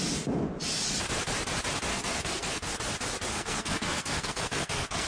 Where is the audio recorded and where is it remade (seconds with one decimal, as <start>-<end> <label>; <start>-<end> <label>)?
0.0-1.9 recorded; 1.9-2.7 remade; 2.7-3.3 recorded; 3.3-5.1 remade